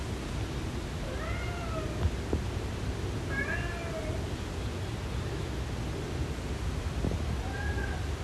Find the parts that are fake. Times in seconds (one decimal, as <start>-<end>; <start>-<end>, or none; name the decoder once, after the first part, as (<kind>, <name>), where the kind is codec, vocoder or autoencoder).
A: none